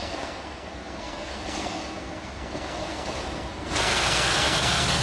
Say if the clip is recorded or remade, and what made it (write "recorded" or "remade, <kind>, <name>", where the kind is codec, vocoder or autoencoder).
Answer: remade, codec, SNAC